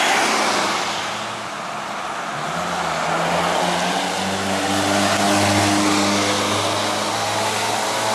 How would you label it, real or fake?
real